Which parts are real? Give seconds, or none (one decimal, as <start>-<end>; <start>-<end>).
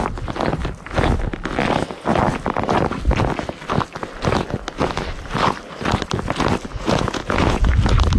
0.0-6.7; 7.6-8.2